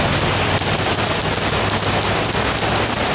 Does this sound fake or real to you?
real